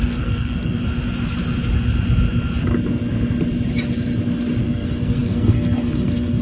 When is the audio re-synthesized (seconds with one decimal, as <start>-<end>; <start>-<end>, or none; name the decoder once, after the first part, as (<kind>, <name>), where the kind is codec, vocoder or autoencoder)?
0.0-0.8 (codec, SNAC); 4.6-6.4